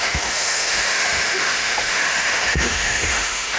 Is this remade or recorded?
remade